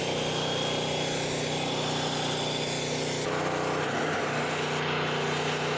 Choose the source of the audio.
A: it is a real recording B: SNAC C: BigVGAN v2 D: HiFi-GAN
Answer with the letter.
A